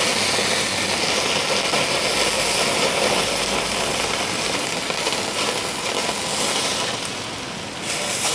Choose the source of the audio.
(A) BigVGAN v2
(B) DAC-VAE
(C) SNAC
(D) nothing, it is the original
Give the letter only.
D